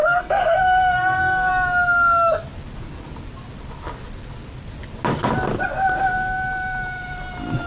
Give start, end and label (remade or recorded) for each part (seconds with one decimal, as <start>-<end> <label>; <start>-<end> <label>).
0.0-1.5 remade; 1.5-7.7 recorded